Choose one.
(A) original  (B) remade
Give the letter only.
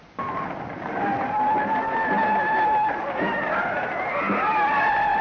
A